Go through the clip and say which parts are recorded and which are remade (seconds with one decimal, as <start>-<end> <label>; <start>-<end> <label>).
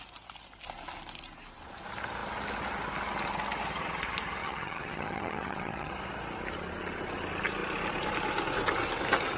0.0-4.4 recorded; 4.4-5.9 remade; 5.9-9.4 recorded